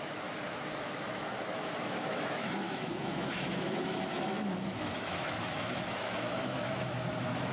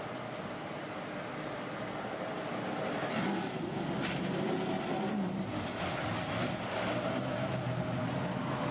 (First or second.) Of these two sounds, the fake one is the first